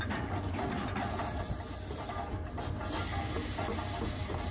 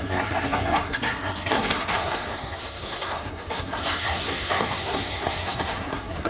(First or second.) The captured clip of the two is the first